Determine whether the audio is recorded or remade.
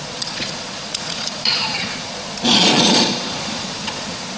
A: remade